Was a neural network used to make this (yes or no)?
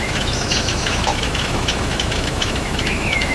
yes